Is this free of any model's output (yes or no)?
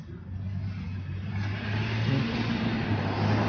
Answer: yes